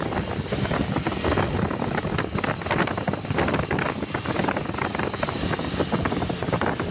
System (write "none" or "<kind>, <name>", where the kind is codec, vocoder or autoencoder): none